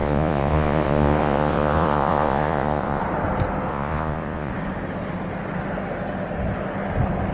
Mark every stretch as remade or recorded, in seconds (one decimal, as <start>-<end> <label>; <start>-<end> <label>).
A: 0.0-3.0 remade; 3.0-3.7 recorded; 3.7-4.5 remade; 4.5-7.3 recorded